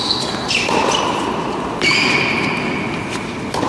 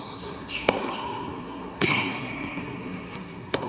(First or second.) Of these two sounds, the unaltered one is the first